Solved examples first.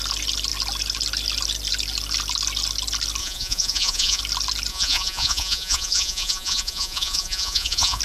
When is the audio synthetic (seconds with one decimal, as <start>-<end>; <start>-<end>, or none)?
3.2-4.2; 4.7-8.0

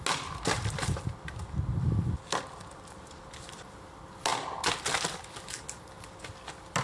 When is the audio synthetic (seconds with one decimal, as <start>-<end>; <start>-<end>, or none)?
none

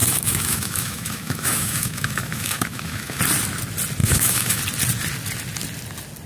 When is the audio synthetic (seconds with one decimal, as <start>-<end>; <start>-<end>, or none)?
0.0-3.2; 4.0-4.6

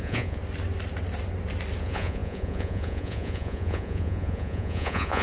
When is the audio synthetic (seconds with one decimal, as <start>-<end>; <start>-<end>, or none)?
0.0-0.4; 1.8-5.2

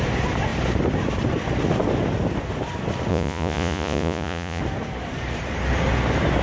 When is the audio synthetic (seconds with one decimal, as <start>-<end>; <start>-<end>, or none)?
3.1-4.6